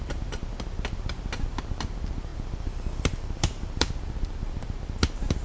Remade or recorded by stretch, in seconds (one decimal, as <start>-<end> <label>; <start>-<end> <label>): 0.0-5.4 remade

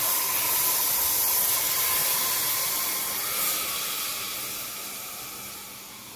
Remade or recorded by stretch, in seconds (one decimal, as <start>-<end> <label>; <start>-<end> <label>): 0.0-6.2 recorded